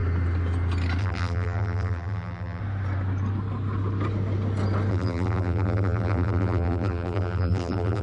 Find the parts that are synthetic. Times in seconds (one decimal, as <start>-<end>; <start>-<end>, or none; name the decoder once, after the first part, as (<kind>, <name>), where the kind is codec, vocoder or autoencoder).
1.0-2.6 (vocoder, BigVGAN v2); 4.9-8.0